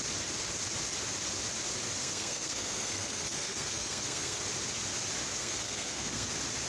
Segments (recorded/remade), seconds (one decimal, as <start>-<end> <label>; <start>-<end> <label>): 0.0-2.0 recorded; 2.0-4.4 remade; 4.4-5.4 recorded; 5.4-6.3 remade; 6.3-6.7 recorded